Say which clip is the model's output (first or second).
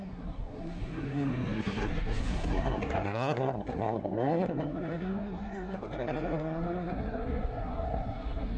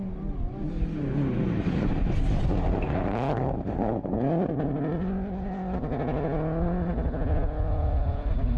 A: first